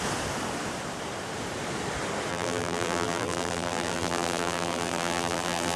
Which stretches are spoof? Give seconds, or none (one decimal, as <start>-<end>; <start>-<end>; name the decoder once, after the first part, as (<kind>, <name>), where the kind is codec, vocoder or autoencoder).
2.3-5.8 (vocoder, BigVGAN v2)